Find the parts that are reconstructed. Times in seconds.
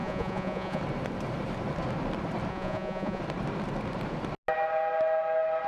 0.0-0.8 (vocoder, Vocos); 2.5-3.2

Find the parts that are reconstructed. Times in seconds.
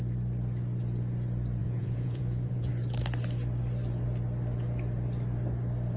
1.6-2.7 (vocoder, Vocos)